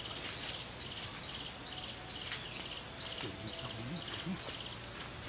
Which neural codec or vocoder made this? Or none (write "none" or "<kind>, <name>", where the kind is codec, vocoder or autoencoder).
none